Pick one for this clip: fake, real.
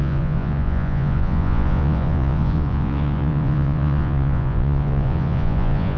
fake